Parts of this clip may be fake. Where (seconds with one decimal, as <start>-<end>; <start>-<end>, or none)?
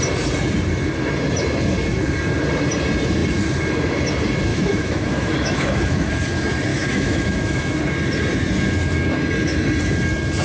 4.5-6.1; 6.7-7.8